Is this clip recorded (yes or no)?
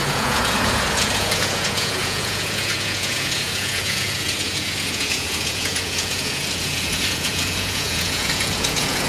no